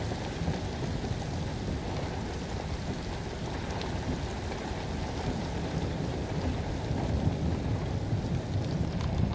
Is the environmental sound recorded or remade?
recorded